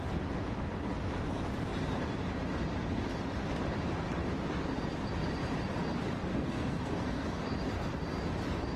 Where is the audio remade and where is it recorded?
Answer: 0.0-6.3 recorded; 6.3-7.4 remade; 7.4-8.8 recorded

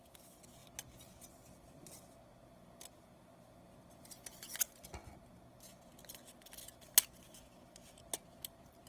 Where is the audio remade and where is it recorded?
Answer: 0.0-8.9 recorded

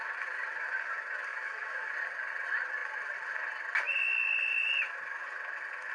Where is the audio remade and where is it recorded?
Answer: 0.0-1.3 recorded; 1.3-1.9 remade; 1.9-5.9 recorded